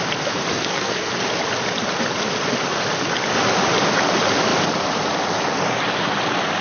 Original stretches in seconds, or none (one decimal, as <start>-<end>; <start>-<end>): 0.0-0.5; 1.1-6.6